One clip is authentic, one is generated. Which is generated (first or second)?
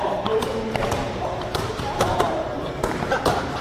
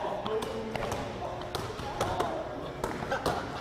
first